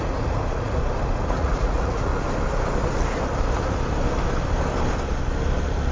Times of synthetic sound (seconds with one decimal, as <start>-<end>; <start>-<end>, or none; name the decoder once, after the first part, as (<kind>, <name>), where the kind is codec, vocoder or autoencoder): 0.0-0.8 (vocoder, Vocos); 1.3-2.1